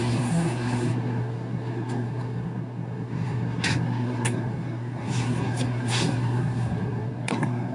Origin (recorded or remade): remade